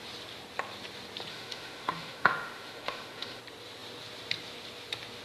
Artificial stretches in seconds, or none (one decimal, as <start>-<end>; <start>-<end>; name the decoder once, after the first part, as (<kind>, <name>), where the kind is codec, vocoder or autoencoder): 1.3-3.4 (autoencoder, DAC-VAE)